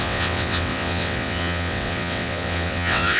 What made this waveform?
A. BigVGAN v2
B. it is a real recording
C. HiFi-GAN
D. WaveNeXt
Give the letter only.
D